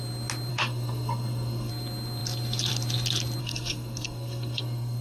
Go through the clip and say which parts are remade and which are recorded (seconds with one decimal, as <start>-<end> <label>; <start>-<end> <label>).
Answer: 0.0-0.5 recorded; 0.5-1.7 remade; 1.7-3.4 recorded; 3.4-5.0 remade